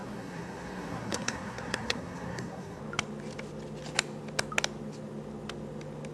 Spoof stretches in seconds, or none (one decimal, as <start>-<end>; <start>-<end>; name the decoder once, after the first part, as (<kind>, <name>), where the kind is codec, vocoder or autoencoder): 0.0-2.8 (codec, SNAC)